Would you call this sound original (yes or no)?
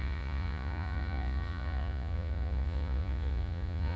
no